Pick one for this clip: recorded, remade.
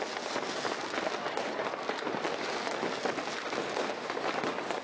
recorded